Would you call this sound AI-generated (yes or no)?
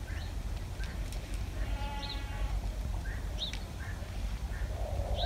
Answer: yes